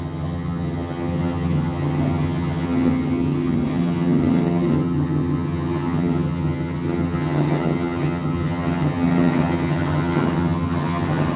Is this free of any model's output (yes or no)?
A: no